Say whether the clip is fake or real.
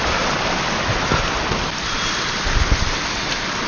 real